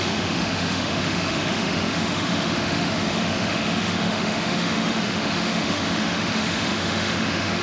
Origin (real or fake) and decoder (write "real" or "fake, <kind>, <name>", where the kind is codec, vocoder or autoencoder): fake, autoencoder, DAC-VAE